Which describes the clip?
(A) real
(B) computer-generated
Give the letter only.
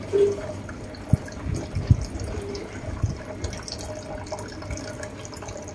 A